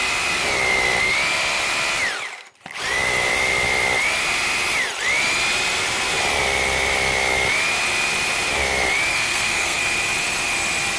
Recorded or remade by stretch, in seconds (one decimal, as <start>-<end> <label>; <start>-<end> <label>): 0.0-9.1 recorded; 9.1-9.8 remade; 9.8-11.0 recorded